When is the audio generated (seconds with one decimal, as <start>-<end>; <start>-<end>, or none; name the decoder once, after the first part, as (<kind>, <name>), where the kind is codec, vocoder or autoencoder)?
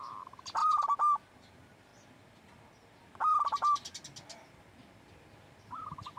0.0-0.6 (vocoder, BigVGAN v2); 1.3-1.9; 5.6-6.2